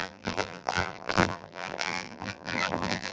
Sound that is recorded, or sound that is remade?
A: remade